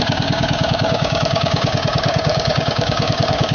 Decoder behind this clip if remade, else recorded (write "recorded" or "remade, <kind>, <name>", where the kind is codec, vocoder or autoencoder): remade, codec, DAC